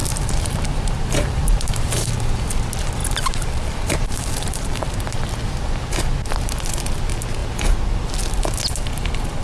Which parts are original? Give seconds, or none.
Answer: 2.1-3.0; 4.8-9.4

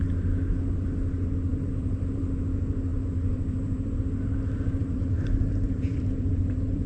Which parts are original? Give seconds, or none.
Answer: 0.0-1.5; 2.2-2.9; 4.0-4.8

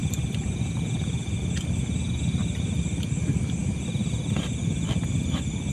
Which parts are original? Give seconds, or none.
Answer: 1.4-5.7

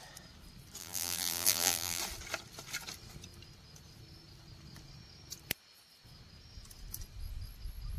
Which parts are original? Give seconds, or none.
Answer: 0.0-0.8; 2.0-8.0

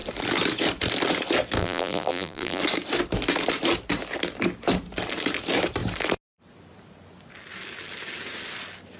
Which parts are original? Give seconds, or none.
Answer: 0.0-1.6; 2.6-9.0

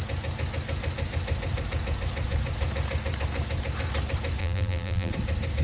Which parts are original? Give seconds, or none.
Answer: 0.0-4.4; 5.1-5.6